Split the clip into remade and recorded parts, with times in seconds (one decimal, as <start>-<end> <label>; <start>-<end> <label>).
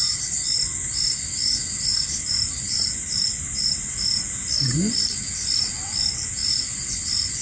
0.0-1.9 recorded; 1.9-4.3 remade; 4.3-6.4 recorded; 6.4-7.4 remade